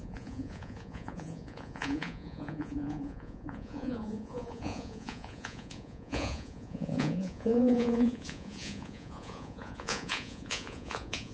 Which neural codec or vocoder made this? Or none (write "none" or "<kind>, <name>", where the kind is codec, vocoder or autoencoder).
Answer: vocoder, Vocos